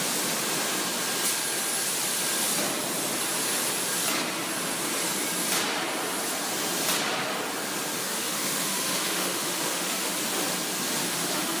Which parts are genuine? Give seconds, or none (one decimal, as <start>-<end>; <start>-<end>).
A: 0.0-8.0; 10.2-11.0

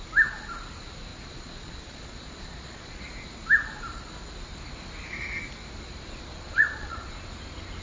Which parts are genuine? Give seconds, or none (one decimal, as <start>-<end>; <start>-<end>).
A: 0.0-1.1; 3.0-6.3; 7.1-7.8

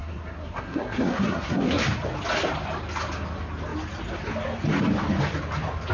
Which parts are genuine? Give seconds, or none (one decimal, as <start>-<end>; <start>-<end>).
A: 1.8-5.9

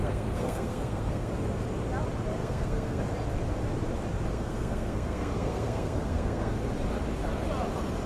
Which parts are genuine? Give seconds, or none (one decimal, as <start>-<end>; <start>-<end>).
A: 1.3-2.4; 3.0-4.3; 6.5-8.1

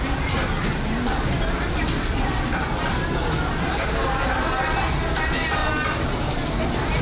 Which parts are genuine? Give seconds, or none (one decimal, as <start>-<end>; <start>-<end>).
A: 0.0-7.0

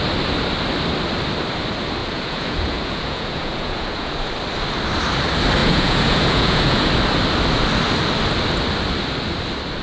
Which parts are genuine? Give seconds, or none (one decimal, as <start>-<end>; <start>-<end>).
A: 0.0-2.0; 4.3-5.6; 6.9-9.8

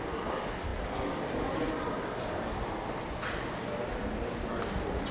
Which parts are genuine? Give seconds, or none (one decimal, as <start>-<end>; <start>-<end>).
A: 0.0-5.1

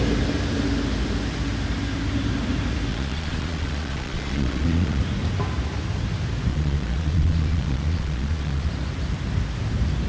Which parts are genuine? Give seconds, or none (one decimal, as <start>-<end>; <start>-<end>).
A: 0.0-2.9; 5.0-6.5; 8.7-10.1